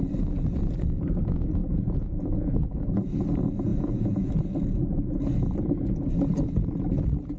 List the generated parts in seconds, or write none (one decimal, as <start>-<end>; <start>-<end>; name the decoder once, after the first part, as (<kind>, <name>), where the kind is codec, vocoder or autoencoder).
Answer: 1.6-3.0 (vocoder, Vocos); 3.7-4.3